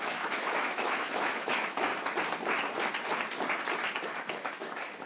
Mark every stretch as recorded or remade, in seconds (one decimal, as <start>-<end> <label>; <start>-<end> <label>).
0.0-1.9 remade; 1.9-4.2 recorded; 4.2-5.1 remade